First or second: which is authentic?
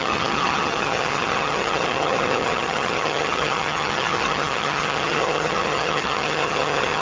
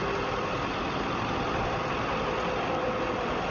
second